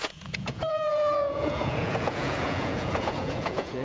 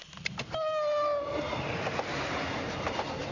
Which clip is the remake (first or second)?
first